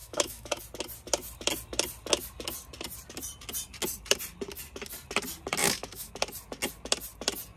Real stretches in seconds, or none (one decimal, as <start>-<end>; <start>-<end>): 0.6-5.6; 6.1-7.6